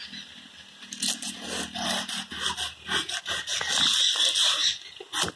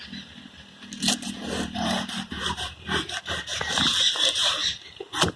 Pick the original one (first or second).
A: first